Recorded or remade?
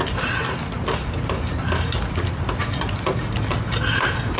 recorded